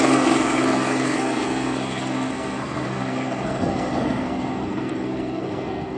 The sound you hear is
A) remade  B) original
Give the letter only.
A